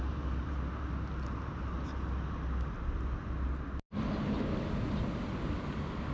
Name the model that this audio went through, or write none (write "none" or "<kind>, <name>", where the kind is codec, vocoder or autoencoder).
none